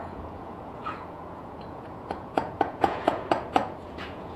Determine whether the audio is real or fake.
fake